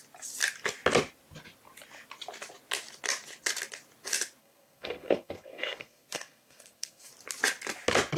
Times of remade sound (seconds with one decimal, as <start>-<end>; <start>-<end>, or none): 4.4-7.1